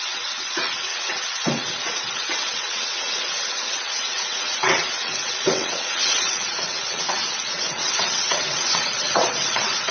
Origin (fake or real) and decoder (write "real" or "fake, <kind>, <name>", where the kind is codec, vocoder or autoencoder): fake, vocoder, WaveNeXt